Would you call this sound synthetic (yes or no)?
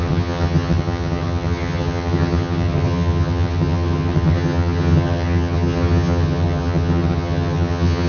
yes